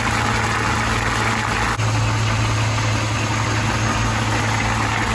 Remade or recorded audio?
recorded